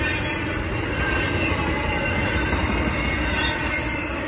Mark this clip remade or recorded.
recorded